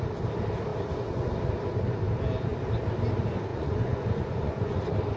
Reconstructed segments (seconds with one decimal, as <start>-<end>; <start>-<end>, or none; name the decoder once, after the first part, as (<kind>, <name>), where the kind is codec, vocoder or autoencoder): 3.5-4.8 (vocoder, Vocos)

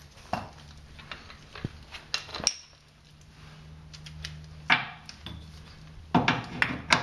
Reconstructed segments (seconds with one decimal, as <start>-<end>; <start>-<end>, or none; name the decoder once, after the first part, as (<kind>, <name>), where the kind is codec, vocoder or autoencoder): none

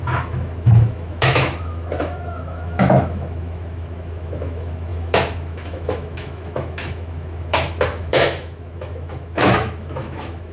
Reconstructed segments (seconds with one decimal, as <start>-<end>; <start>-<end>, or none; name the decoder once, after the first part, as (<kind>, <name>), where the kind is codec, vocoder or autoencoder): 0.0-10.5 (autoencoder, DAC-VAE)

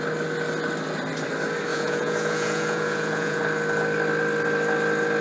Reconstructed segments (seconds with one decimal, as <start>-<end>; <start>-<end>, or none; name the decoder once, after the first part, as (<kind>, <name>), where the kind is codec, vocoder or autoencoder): 1.7-3.4 (vocoder, Vocos)